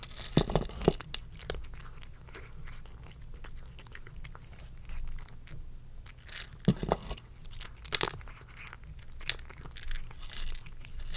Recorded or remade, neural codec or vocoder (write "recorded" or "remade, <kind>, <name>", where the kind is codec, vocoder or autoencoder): recorded